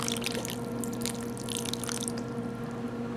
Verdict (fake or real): real